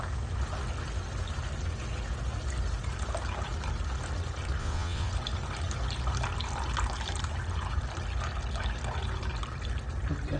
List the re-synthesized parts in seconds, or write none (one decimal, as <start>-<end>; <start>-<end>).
4.6-5.1